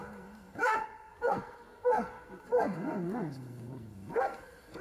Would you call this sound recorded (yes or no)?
no